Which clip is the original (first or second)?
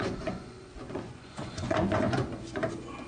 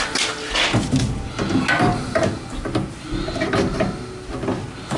second